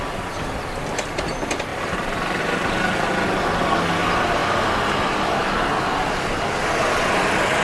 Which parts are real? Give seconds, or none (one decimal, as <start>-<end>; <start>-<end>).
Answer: 0.0-7.6